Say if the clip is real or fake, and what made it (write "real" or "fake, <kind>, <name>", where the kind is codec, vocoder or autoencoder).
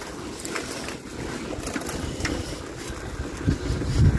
real